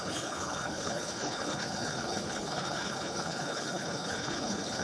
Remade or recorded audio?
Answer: remade